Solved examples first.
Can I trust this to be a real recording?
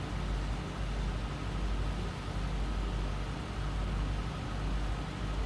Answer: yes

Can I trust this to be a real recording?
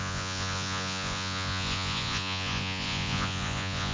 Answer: no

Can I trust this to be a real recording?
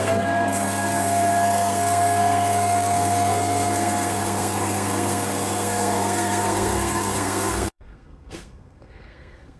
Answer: no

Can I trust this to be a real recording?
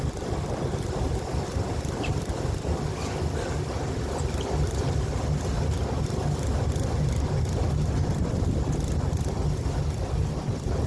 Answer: yes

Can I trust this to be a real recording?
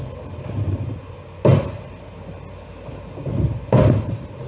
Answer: yes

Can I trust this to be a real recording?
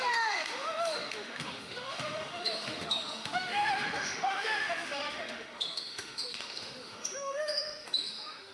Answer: no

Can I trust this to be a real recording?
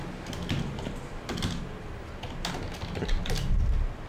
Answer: yes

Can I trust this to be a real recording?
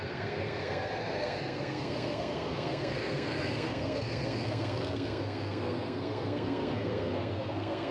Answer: no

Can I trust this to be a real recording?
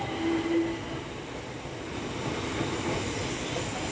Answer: yes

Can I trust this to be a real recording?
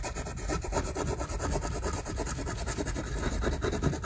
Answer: no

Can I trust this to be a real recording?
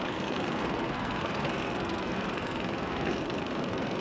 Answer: no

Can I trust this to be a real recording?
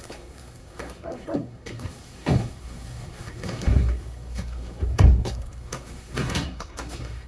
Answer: no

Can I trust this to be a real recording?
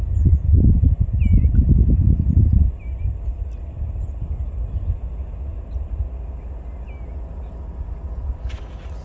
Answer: yes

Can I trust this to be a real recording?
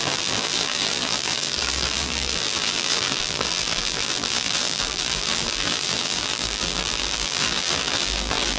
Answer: no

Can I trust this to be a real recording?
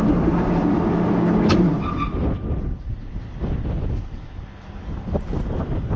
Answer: yes